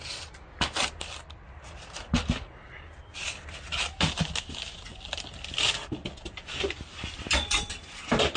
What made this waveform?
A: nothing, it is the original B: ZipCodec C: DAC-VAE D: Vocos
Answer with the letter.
A